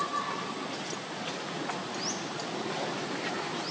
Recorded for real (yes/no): yes